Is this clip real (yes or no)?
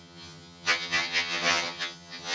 no